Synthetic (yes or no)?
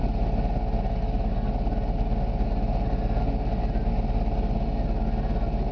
no